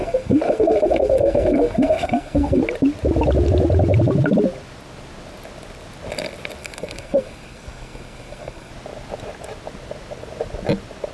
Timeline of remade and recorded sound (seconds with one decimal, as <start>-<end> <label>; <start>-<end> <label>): 0.0-2.6 remade; 2.6-6.6 recorded; 6.6-8.7 remade; 8.7-11.1 recorded